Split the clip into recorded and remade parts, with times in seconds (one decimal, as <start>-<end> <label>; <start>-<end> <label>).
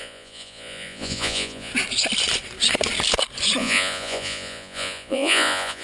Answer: 0.0-1.7 remade; 1.7-3.6 recorded; 3.6-5.8 remade